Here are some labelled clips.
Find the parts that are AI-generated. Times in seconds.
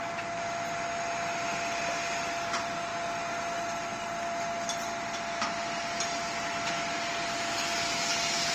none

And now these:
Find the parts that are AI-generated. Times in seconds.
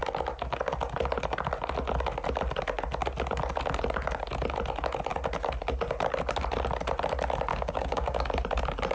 7.5-8.3 (codec, DAC)